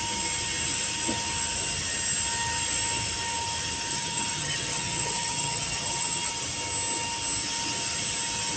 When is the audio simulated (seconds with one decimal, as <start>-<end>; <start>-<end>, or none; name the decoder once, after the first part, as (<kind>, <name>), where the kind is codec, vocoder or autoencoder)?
3.9-6.3 (vocoder, HiFi-GAN)